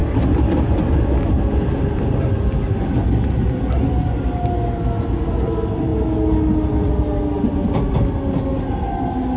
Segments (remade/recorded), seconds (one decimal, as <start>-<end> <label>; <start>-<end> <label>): 0.0-9.4 recorded